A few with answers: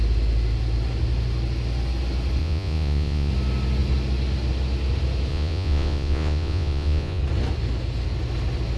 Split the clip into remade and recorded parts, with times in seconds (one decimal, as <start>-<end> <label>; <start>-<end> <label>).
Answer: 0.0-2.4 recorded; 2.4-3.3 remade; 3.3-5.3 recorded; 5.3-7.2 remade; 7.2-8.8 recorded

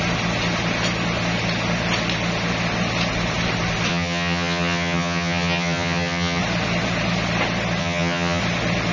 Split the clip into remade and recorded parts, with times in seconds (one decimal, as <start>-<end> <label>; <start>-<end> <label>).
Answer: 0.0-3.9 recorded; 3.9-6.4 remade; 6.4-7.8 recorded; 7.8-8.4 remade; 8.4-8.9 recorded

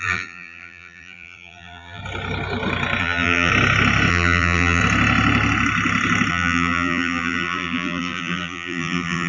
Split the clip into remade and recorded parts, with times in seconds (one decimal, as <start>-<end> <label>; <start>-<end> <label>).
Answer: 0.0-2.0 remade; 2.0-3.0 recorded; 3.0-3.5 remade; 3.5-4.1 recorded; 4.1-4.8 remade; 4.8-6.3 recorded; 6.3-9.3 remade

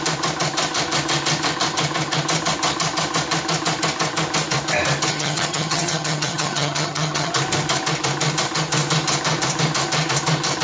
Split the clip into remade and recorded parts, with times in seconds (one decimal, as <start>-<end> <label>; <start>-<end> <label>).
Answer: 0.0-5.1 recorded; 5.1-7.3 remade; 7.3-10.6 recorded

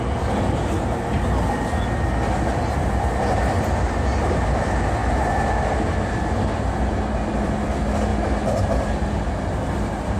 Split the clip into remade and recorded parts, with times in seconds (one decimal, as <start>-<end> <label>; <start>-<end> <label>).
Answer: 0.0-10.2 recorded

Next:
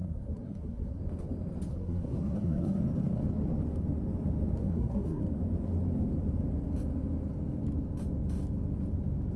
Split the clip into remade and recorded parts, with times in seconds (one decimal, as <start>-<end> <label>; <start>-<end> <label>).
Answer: 0.0-1.0 remade; 1.0-1.7 recorded; 1.7-2.8 remade; 2.8-4.6 recorded; 4.6-5.2 remade; 5.2-9.4 recorded

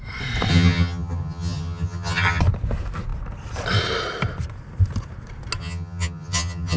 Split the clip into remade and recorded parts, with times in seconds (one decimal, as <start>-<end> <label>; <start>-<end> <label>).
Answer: 0.0-0.5 recorded; 0.5-2.4 remade; 2.4-5.6 recorded; 5.6-6.8 remade

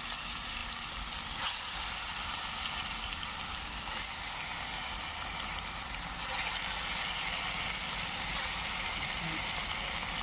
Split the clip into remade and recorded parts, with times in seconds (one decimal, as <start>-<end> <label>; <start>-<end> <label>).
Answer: 0.0-10.2 recorded